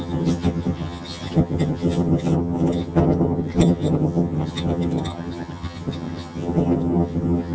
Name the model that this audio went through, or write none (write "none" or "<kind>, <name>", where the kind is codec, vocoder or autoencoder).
vocoder, HiFi-GAN